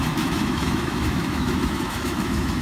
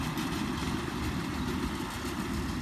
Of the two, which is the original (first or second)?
second